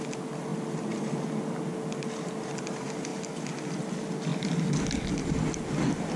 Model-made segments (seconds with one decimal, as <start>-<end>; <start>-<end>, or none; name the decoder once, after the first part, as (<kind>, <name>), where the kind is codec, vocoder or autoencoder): none